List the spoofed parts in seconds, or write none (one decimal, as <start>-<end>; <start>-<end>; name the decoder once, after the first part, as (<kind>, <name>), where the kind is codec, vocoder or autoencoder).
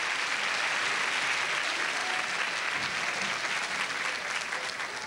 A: none